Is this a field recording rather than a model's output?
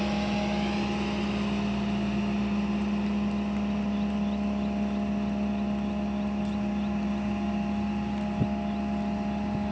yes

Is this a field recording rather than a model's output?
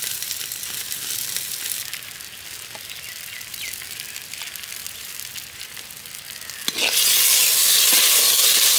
yes